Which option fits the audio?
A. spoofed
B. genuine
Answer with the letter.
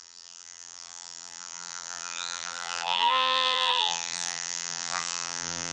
A